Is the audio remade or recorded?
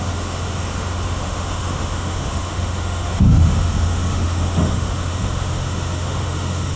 remade